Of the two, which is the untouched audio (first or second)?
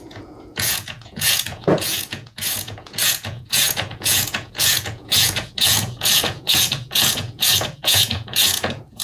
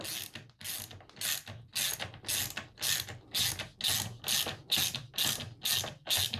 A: second